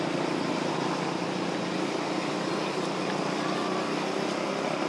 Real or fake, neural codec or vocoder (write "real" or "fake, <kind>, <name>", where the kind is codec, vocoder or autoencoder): fake, vocoder, BigVGAN v2